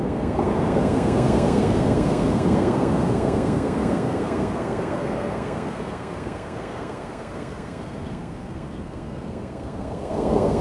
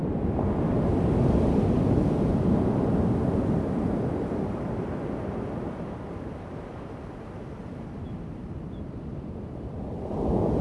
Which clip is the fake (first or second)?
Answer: first